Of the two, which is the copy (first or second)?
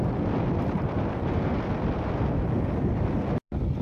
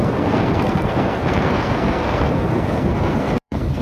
second